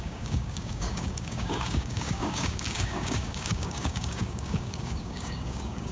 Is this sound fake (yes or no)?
yes